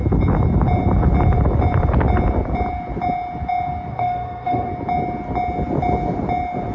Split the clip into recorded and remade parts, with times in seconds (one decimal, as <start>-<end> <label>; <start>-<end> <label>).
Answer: 0.0-3.9 recorded; 3.9-4.7 remade; 4.7-6.7 recorded